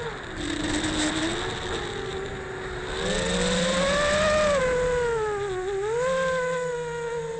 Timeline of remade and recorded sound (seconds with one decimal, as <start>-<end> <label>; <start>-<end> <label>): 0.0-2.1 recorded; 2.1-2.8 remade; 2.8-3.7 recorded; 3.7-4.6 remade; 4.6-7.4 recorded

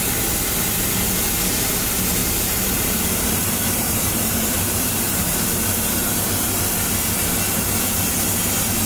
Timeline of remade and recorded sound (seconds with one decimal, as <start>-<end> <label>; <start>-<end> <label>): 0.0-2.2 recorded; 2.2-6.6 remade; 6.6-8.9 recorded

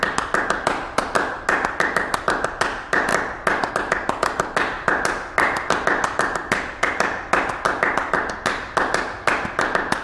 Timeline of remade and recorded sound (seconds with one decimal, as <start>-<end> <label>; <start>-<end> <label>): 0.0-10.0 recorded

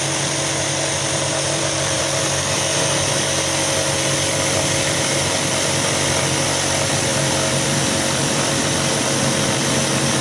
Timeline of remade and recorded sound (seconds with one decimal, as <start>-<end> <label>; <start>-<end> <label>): 0.0-1.0 recorded; 1.0-2.0 remade; 2.0-7.1 recorded; 7.1-9.2 remade; 9.2-10.2 recorded

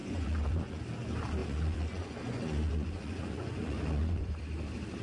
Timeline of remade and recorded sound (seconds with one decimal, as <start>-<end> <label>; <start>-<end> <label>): 0.0-0.8 remade; 0.8-1.4 recorded; 1.4-4.4 remade; 4.4-5.0 recorded

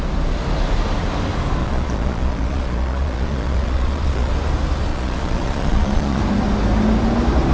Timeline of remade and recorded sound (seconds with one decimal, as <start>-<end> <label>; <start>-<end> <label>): 0.0-1.6 recorded; 1.6-4.3 remade; 4.3-4.9 recorded; 4.9-6.2 remade; 6.2-7.5 recorded

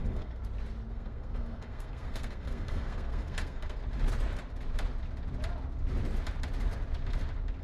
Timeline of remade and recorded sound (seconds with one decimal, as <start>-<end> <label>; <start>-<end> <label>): 0.0-0.4 remade; 0.4-0.9 recorded; 0.9-3.8 remade; 3.8-7.6 recorded

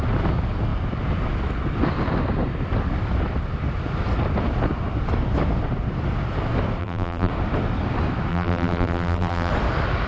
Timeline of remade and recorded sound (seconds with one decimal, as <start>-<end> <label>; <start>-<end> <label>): 0.0-6.8 recorded; 6.8-7.3 remade; 7.3-8.3 recorded; 8.3-9.5 remade; 9.5-10.1 recorded